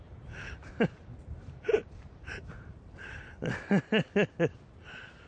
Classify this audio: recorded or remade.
remade